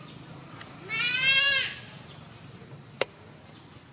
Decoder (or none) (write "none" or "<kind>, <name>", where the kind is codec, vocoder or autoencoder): none